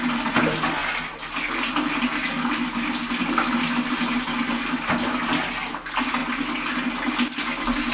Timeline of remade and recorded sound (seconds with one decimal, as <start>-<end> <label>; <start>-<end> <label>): 0.0-7.9 recorded